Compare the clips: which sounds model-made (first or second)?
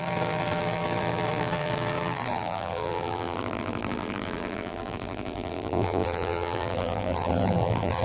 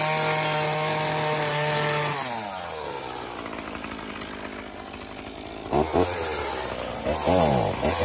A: first